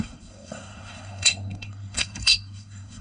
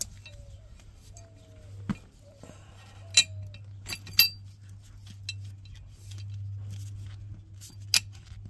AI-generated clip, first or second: first